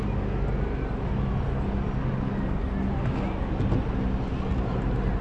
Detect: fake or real real